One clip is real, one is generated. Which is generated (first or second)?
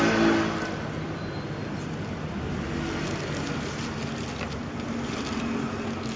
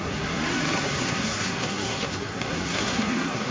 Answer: second